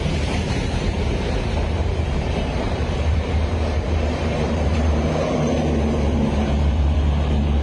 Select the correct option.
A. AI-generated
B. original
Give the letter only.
A